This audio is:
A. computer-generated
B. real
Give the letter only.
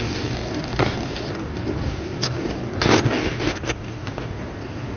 A